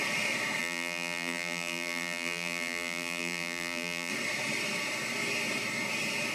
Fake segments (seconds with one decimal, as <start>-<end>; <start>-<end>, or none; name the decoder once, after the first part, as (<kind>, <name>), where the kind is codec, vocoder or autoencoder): 0.6-4.1 (vocoder, BigVGAN v2)